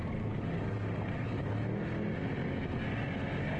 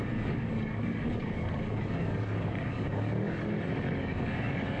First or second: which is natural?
first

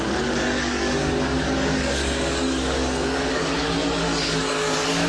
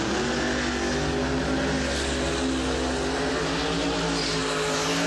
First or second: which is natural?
second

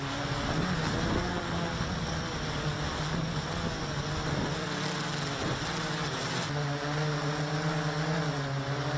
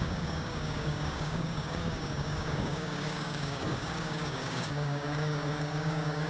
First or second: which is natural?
first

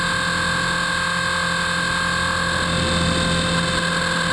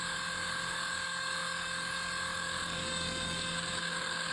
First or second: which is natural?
first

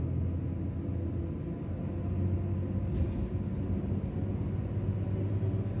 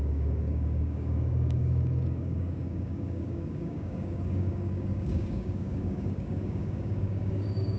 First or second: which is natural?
first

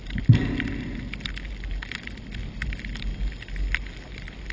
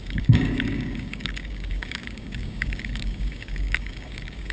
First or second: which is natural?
first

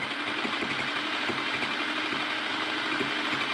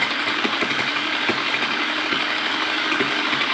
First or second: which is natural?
first